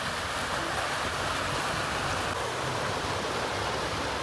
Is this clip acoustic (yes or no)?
yes